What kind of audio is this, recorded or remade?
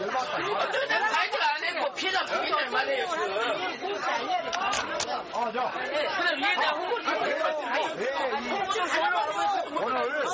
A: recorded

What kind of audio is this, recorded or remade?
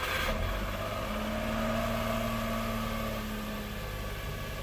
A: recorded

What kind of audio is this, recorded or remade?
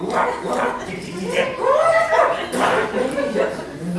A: remade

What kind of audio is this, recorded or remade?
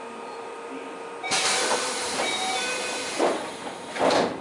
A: remade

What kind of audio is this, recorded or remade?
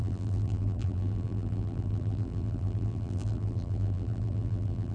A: remade